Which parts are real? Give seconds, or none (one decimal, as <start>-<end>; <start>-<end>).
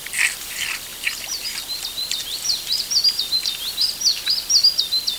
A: 0.0-0.9; 1.6-2.2; 2.9-5.2